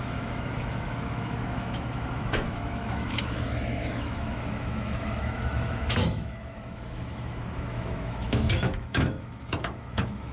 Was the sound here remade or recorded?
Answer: remade